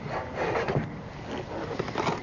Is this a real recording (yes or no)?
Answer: yes